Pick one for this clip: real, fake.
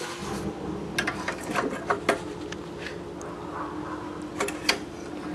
real